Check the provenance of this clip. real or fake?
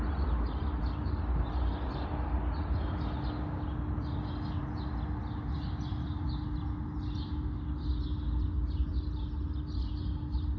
real